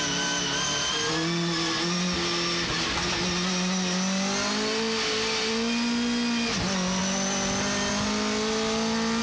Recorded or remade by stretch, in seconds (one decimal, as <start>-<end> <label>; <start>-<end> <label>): 0.0-9.2 recorded